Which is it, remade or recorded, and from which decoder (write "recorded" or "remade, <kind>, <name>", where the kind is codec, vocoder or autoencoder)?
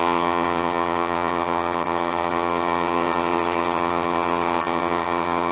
remade, vocoder, HiFi-GAN